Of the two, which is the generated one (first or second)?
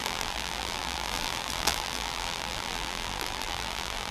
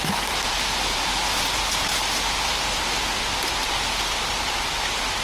first